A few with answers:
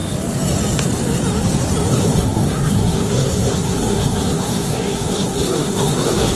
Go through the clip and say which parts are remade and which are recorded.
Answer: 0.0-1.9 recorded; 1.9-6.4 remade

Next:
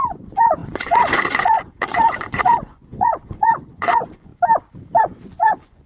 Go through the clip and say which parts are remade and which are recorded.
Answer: 0.0-4.3 remade; 4.3-5.0 recorded; 5.0-5.9 remade

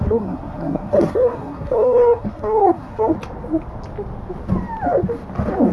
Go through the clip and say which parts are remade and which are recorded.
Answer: 0.0-3.1 remade; 3.1-5.7 recorded